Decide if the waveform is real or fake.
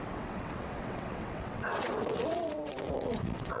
fake